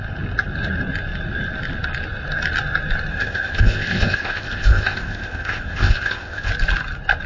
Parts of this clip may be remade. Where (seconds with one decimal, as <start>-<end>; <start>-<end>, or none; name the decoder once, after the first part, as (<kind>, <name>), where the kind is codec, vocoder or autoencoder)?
3.1-6.5 (codec, ZipCodec)